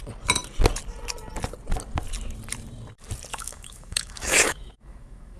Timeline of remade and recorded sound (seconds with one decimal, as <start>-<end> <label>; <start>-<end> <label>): 0.0-3.3 recorded; 3.3-5.4 remade